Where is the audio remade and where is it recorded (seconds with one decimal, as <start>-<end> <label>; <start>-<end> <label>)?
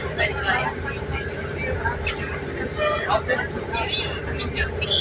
0.0-1.6 remade; 1.6-3.5 recorded; 3.5-4.2 remade; 4.2-5.0 recorded